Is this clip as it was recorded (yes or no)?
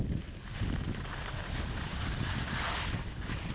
yes